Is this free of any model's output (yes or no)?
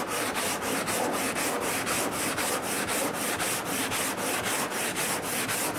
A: yes